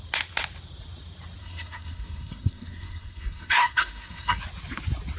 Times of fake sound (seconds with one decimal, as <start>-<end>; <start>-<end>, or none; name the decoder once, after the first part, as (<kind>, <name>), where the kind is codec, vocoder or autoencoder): 1.4-4.4 (codec, SNAC)